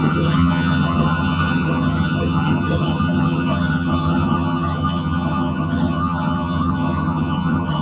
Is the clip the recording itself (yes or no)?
no